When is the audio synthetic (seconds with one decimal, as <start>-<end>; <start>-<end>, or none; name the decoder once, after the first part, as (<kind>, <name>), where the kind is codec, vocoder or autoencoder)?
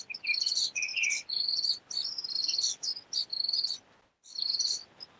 none